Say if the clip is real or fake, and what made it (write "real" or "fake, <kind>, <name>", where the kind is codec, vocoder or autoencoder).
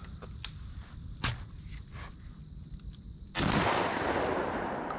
real